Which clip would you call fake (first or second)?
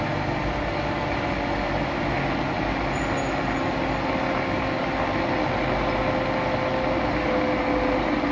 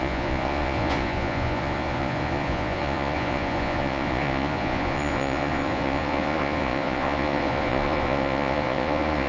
second